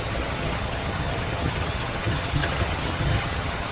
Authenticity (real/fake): fake